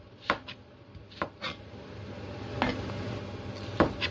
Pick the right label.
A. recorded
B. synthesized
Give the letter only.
A